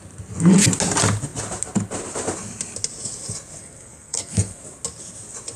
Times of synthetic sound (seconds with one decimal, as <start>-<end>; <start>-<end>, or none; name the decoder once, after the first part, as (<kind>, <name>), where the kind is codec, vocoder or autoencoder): 3.6-4.6 (codec, SNAC)